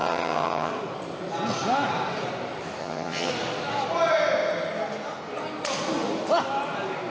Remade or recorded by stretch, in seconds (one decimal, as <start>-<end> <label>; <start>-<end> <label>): 0.0-0.7 remade; 0.7-2.8 recorded; 2.8-3.3 remade; 3.3-7.1 recorded